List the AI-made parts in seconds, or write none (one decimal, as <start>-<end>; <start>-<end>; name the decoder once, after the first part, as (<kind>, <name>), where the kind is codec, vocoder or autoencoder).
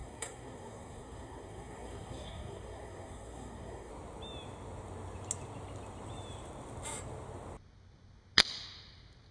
0.0-3.9 (codec, SNAC)